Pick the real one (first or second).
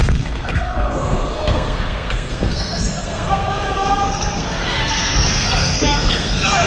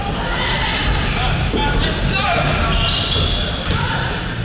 second